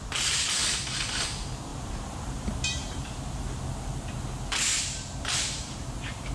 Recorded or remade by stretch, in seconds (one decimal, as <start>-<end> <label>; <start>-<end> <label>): 0.0-1.7 recorded; 1.7-3.6 remade; 3.6-4.7 recorded; 4.7-6.3 remade